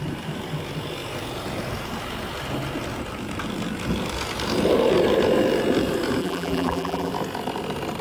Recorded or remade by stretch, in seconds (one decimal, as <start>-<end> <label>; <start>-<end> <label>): 0.0-6.2 recorded; 6.2-7.1 remade; 7.1-8.0 recorded